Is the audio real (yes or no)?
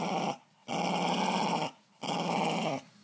yes